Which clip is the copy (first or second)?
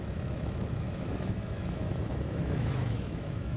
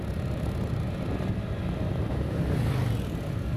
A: first